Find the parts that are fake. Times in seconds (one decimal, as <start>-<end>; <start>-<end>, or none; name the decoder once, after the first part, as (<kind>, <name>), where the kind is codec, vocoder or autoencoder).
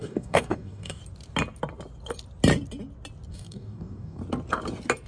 0.0-1.0 (codec, DAC); 3.3-4.2